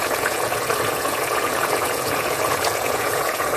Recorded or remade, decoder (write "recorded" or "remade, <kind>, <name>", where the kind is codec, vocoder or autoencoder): remade, vocoder, Vocos